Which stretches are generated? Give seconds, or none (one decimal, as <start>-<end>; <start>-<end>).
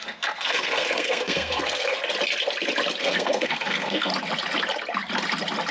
0.0-2.0; 3.0-4.1